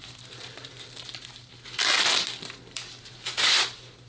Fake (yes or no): yes